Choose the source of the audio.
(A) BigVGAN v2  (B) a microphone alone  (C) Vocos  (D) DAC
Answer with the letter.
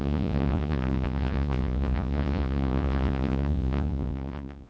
C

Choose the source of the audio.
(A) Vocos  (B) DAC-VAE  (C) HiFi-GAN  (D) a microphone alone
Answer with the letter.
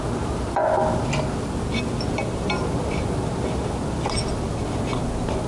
D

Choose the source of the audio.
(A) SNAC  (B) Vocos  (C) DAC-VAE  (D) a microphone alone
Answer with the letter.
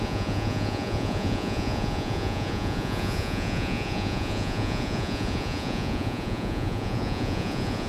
B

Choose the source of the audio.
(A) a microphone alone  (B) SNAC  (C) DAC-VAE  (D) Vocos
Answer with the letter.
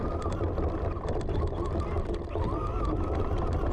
A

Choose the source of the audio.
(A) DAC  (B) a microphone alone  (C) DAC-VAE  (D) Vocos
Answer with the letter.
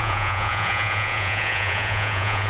D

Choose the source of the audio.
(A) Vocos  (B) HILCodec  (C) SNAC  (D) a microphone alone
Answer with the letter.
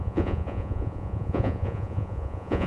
A